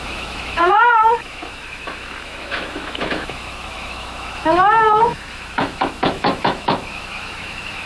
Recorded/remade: remade